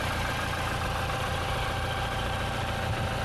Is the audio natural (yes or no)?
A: yes